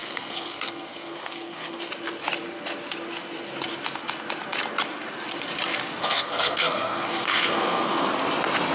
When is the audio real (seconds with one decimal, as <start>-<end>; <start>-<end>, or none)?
1.9-6.0; 8.1-8.7